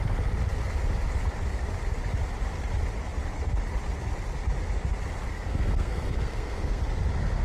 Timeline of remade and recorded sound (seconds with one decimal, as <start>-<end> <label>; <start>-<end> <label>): 0.0-5.3 recorded; 5.3-6.8 remade; 6.8-7.4 recorded